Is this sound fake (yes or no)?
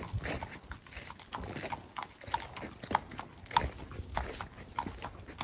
no